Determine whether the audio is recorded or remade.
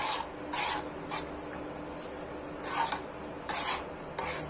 recorded